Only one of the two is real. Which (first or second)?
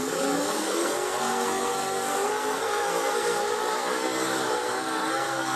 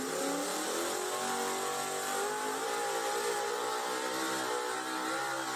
second